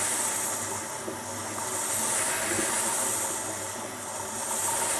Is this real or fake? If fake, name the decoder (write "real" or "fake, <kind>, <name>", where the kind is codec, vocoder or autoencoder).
real